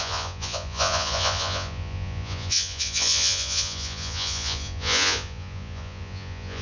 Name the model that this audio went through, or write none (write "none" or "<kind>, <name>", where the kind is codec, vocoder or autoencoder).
vocoder, Vocos